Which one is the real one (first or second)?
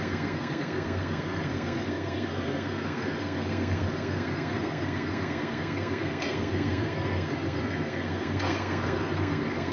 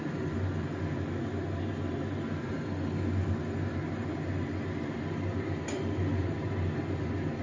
second